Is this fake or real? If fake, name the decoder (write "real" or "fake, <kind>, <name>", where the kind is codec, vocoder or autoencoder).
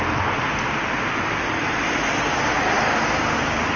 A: real